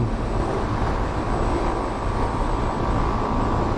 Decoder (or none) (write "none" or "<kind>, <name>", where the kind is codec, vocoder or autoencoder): none